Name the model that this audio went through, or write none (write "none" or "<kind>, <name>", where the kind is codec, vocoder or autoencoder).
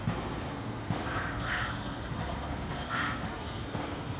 codec, SNAC